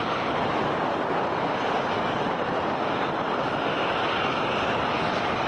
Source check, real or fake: real